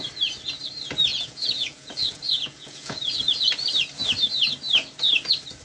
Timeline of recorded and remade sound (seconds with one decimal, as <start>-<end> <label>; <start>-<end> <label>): 0.0-1.1 recorded; 1.1-3.5 remade; 3.5-5.6 recorded